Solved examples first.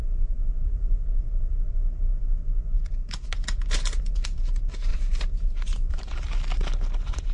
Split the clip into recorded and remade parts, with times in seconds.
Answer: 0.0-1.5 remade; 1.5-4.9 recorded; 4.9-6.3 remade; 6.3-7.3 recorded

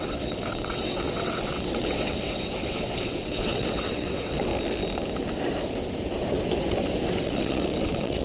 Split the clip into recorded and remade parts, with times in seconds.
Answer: 0.0-4.5 remade; 4.5-7.2 recorded; 7.2-8.2 remade

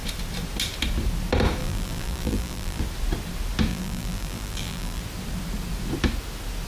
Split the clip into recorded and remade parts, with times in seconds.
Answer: 0.0-1.6 recorded; 1.6-2.8 remade; 2.8-3.7 recorded; 3.7-5.0 remade; 5.0-6.7 recorded